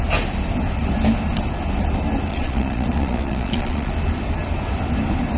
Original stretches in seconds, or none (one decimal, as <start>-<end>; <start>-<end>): 0.0-2.3; 3.9-5.4